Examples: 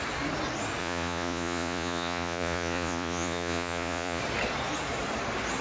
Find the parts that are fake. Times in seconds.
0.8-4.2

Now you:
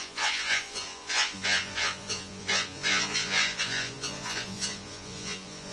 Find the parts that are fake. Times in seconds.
0.0-5.7

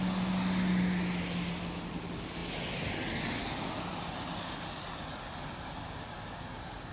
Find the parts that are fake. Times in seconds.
none

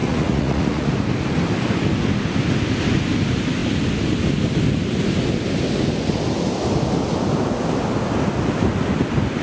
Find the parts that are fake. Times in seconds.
0.0-0.9

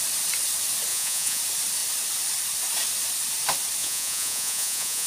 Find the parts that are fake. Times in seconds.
0.9-1.4; 3.8-5.1

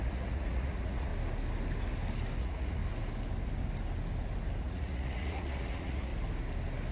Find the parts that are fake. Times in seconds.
0.0-1.1; 2.4-2.8; 4.6-6.1

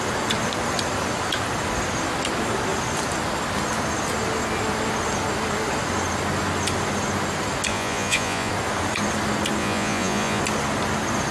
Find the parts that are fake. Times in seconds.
7.7-8.5; 9.6-10.4

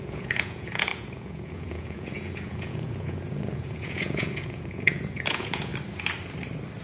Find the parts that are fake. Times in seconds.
0.0-5.7